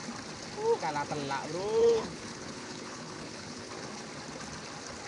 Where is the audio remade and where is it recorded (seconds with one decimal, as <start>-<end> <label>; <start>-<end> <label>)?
0.0-1.8 recorded; 1.8-3.7 remade; 3.7-5.1 recorded